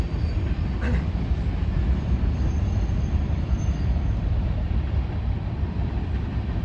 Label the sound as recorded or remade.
remade